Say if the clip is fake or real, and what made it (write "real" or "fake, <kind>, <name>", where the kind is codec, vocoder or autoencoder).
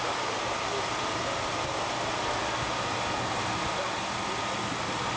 real